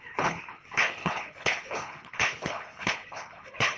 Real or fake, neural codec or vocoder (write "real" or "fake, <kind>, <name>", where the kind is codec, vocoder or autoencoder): fake, codec, HILCodec